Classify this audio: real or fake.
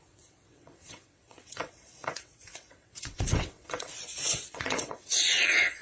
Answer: fake